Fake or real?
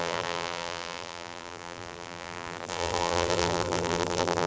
fake